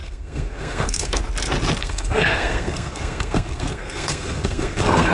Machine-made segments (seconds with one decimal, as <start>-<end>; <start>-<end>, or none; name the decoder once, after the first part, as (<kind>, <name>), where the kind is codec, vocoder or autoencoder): 0.0-1.2 (codec, SNAC); 1.8-5.1